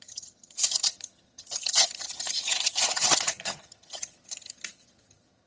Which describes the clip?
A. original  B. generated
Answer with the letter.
B